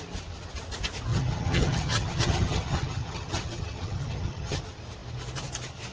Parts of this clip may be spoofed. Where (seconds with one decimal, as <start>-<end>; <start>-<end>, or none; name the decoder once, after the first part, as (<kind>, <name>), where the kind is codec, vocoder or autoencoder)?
1.1-4.6 (vocoder, HiFi-GAN)